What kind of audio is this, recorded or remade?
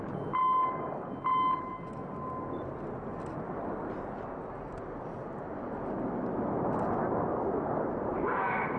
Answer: recorded